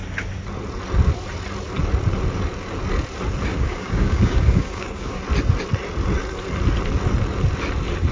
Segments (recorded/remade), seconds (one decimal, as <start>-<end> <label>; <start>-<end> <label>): 0.0-3.5 recorded; 3.5-5.2 remade; 5.2-8.1 recorded